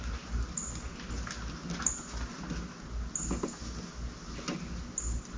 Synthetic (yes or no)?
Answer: no